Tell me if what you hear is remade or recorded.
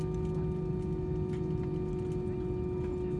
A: recorded